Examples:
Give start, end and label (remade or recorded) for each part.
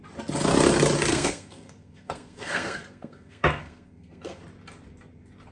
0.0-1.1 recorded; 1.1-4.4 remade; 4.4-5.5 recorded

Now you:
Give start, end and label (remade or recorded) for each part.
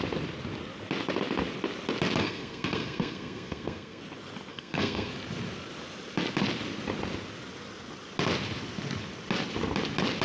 0.0-2.2 recorded; 2.2-4.0 remade; 4.0-4.5 recorded; 4.5-5.1 remade; 5.1-10.2 recorded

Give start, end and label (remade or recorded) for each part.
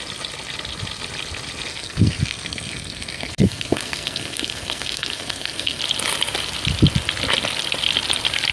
0.0-1.7 recorded; 1.7-5.8 remade; 5.8-8.5 recorded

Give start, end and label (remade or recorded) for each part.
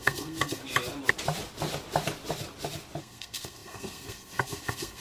0.0-0.6 remade; 0.6-3.0 recorded; 3.0-5.0 remade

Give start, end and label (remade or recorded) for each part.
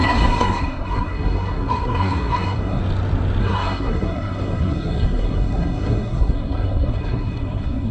0.0-2.8 remade; 2.8-3.4 recorded; 3.4-7.9 remade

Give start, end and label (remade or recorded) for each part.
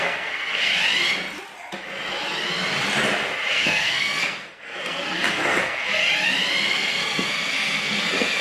0.0-0.7 remade; 0.7-3.5 recorded; 3.5-6.0 remade; 6.0-6.7 recorded; 6.7-8.4 remade